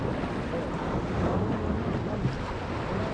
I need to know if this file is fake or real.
real